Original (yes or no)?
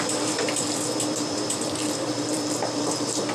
no